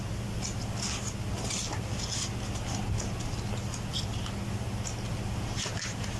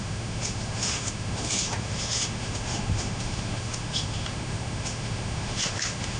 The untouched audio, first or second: first